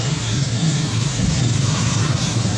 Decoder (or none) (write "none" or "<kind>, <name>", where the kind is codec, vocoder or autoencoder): codec, SNAC